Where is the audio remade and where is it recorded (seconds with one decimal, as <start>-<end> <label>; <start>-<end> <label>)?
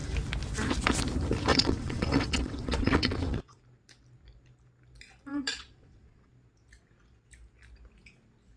0.0-1.5 recorded; 1.5-3.6 remade; 3.6-5.3 recorded; 5.3-6.3 remade; 6.3-8.6 recorded